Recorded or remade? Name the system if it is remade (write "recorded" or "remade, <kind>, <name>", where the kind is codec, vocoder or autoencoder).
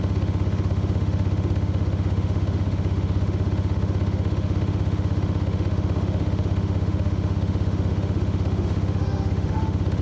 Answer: remade, autoencoder, DAC-VAE